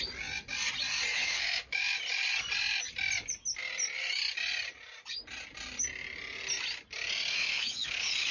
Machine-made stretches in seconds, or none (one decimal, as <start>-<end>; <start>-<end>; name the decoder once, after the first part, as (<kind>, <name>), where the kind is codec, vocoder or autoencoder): 1.1-1.8 (autoencoder, DAC-VAE); 7.3-8.3